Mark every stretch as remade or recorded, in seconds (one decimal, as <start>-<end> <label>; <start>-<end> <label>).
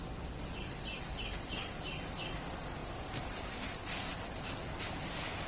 0.0-5.5 recorded